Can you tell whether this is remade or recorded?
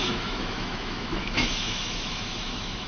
remade